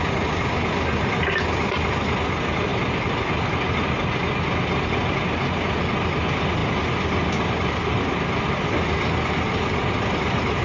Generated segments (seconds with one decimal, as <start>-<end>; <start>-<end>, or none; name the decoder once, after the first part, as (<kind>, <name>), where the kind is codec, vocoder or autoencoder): none